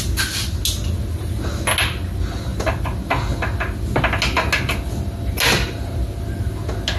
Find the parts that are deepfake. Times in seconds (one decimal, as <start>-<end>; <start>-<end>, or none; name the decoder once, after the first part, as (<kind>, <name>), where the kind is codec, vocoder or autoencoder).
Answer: none

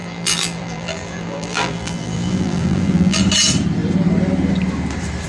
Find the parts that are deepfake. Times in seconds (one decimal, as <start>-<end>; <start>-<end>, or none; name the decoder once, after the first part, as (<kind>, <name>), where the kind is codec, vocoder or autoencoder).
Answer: 0.0-3.2 (vocoder, BigVGAN v2)